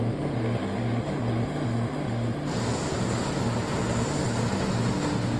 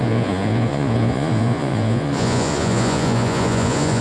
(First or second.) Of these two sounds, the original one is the first